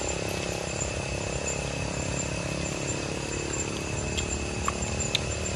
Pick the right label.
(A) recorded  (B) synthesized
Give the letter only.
A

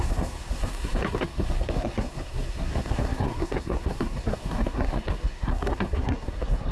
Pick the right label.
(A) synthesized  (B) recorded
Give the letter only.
A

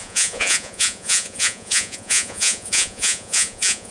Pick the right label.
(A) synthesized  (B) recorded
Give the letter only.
A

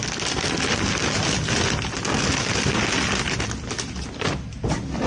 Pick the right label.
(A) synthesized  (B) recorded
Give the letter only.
B